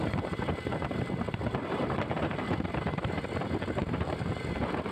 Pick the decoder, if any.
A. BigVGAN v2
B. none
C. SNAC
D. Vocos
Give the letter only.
A